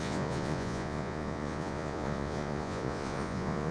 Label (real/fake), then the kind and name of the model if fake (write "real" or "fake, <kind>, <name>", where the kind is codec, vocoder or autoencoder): fake, vocoder, Vocos